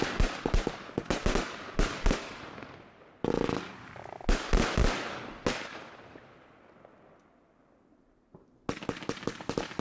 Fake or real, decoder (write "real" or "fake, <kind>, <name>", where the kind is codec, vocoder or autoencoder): real